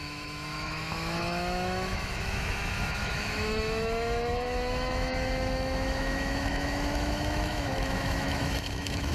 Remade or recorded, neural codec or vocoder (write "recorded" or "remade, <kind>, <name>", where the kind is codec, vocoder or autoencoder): remade, autoencoder, DAC-VAE